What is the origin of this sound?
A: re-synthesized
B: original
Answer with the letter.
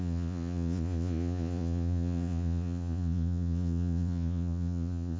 A